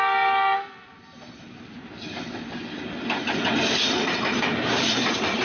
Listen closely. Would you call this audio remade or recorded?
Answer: recorded